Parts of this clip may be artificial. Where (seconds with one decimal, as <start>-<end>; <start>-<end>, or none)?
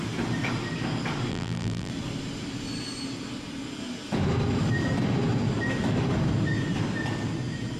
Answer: 1.3-1.9